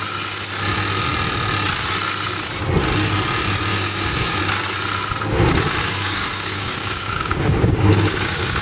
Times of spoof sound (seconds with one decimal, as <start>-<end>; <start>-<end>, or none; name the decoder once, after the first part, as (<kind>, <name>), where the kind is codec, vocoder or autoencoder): 3.7-4.4 (codec, DAC); 5.8-8.6